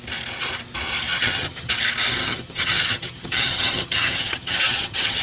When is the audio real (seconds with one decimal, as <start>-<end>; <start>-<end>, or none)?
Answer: 0.0-1.1; 1.7-2.1